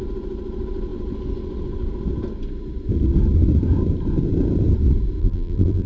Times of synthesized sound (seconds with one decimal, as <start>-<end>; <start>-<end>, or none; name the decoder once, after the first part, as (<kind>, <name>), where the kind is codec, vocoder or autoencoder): 5.2-5.9 (vocoder, BigVGAN v2)